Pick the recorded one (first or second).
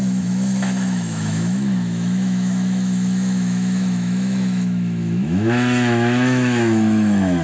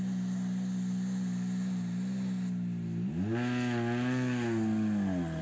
second